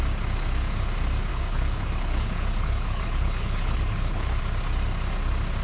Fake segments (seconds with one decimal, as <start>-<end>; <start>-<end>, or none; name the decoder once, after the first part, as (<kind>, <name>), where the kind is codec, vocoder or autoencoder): 1.3-4.4 (codec, HILCodec)